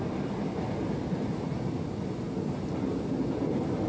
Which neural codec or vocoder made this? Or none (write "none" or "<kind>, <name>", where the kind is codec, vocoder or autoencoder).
none